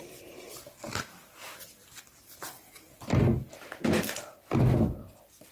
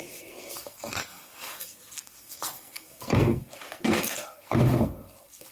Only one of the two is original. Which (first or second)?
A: first